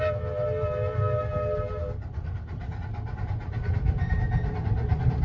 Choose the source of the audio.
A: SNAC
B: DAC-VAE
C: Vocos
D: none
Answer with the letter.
D